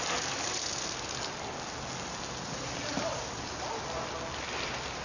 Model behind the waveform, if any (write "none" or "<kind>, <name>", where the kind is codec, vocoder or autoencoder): none